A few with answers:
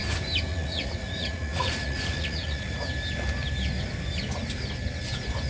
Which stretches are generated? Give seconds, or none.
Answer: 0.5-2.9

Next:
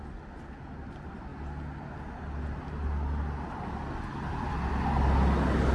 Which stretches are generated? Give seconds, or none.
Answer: none

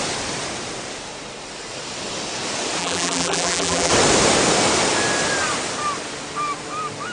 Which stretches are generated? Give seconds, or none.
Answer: 2.8-3.9